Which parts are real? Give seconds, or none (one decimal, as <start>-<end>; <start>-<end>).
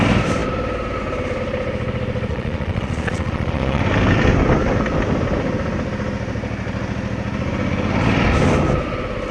0.0-2.3; 3.8-9.3